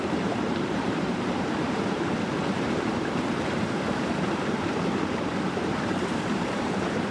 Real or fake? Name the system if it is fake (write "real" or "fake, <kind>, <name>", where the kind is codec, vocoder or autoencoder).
fake, vocoder, BigVGAN v2